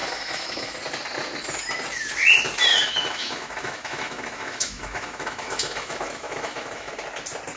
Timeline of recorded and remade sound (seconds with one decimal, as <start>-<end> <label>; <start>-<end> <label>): 0.0-0.8 remade; 0.8-2.7 recorded; 2.7-6.9 remade; 6.9-7.6 recorded